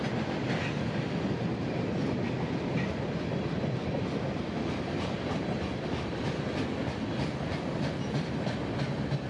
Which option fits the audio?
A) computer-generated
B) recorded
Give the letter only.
B